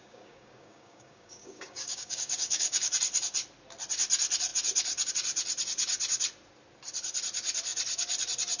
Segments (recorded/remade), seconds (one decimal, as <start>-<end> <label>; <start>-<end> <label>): 0.0-2.9 remade; 2.9-8.6 recorded